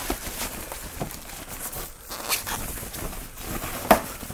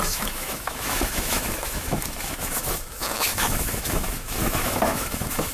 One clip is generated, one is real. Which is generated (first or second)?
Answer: second